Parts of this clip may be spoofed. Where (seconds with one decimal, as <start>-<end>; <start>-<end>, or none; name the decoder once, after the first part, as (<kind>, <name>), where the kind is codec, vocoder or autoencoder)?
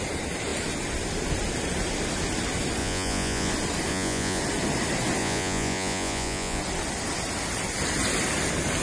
2.8-3.5 (vocoder, Vocos); 3.9-4.4; 5.2-6.6